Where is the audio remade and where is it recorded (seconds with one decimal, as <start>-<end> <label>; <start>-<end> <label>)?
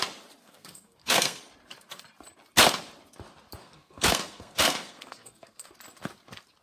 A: 0.0-0.4 recorded; 0.4-1.4 remade; 1.4-3.6 recorded; 3.6-5.7 remade; 5.7-6.6 recorded